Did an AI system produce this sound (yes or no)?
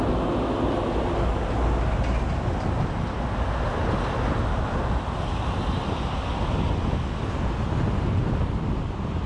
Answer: no